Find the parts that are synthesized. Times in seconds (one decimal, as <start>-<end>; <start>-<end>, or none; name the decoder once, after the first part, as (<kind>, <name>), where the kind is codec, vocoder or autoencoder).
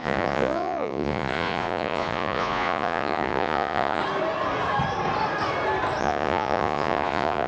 0.0-4.0 (vocoder, Vocos); 6.0-7.5